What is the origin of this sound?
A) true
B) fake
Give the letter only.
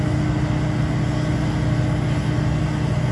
A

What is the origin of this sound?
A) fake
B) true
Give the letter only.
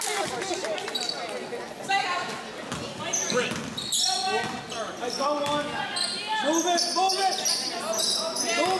B